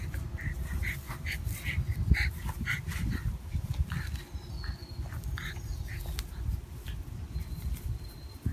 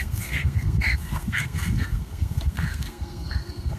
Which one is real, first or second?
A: first